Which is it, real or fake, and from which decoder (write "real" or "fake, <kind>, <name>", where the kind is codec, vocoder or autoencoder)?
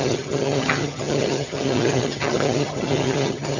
fake, vocoder, HiFi-GAN